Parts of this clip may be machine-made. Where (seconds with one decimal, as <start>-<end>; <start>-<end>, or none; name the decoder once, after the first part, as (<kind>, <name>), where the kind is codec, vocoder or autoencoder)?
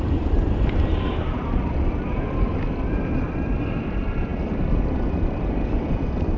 0.0-6.4 (vocoder, BigVGAN v2)